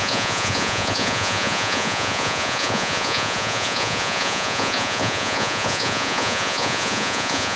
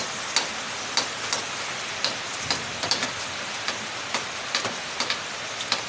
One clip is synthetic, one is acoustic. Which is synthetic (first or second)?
first